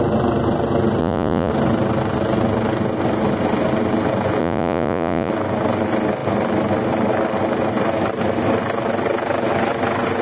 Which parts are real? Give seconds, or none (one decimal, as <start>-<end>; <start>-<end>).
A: 0.0-1.0; 1.5-4.4; 5.3-10.2